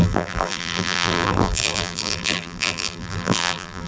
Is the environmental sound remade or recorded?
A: remade